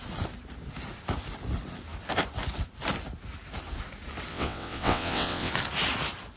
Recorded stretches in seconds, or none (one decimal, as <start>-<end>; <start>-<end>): 0.0-4.3; 5.5-6.4